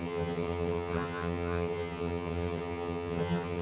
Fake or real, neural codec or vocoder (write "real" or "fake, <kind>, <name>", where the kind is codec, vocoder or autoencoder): fake, vocoder, HiFi-GAN